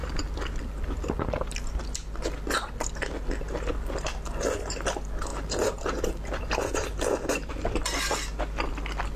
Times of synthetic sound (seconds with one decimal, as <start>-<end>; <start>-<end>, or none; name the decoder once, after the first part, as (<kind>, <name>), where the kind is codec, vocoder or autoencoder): 0.0-1.8 (vocoder, BigVGAN v2); 5.3-7.5